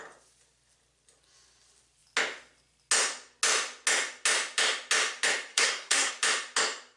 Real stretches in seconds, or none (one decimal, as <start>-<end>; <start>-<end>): 0.0-5.5; 6.1-7.0